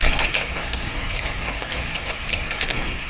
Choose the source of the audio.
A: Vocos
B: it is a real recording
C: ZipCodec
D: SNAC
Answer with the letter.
D